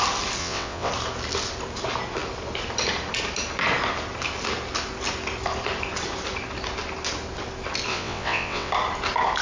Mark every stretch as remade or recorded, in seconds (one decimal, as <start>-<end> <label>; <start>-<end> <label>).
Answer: 0.0-0.4 recorded; 0.4-0.9 remade; 0.9-7.9 recorded; 7.9-8.7 remade; 8.7-9.4 recorded